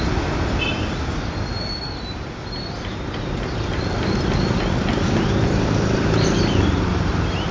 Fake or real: real